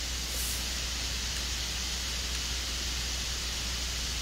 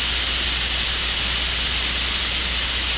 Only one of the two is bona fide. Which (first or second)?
second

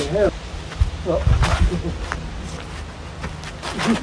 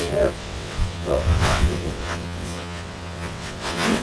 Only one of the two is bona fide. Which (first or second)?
first